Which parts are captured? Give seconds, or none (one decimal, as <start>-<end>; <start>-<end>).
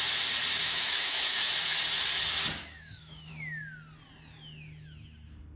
0.0-0.6; 1.5-2.6; 3.3-5.6